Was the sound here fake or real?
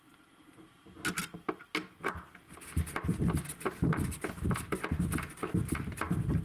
real